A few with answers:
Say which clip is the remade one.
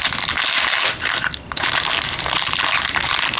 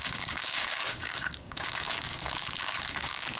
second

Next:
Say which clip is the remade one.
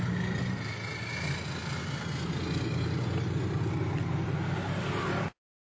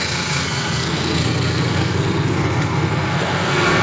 second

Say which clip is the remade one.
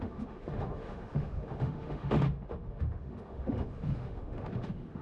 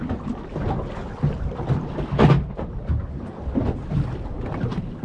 first